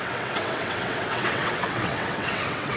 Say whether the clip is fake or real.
fake